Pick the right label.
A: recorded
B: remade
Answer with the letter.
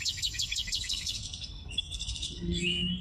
B